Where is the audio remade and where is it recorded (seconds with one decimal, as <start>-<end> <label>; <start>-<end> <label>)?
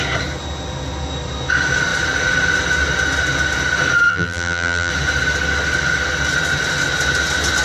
0.0-4.1 recorded; 4.1-4.9 remade; 4.9-7.6 recorded